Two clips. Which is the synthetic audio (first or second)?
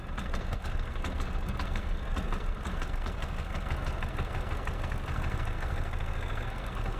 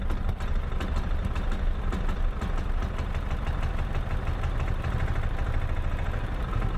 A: first